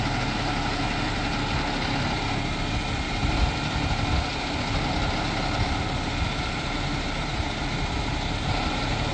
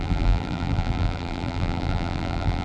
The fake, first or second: second